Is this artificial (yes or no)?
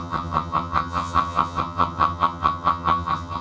yes